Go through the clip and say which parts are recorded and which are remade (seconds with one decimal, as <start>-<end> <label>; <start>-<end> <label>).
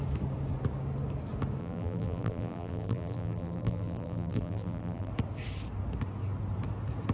0.0-1.6 recorded; 1.6-5.1 remade; 5.1-7.1 recorded